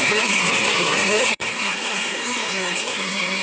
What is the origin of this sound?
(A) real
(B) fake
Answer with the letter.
B